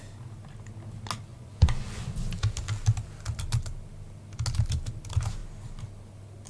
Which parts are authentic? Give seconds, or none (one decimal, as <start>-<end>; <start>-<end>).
0.0-1.3; 2.0-6.5